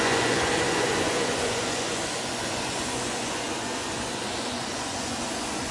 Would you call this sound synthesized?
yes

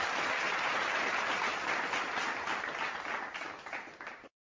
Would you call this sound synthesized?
no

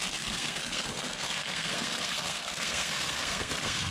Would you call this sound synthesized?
yes